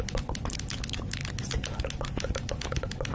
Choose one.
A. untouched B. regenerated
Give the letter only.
A